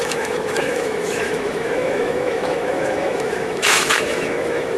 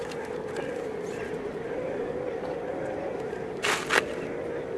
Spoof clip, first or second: first